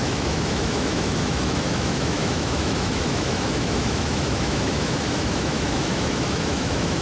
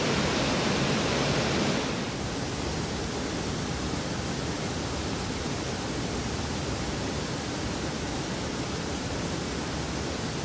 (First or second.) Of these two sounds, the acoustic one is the second